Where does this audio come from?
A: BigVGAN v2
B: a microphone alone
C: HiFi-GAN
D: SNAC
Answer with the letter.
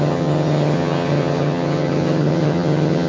C